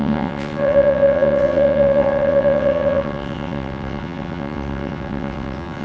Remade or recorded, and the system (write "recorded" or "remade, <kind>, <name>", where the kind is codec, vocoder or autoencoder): remade, vocoder, WaveNeXt